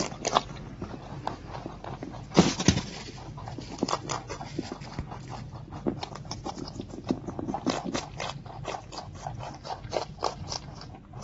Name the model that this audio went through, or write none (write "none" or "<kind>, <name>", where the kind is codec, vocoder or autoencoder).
none